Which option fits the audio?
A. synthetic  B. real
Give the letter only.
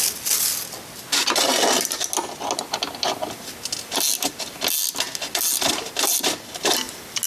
B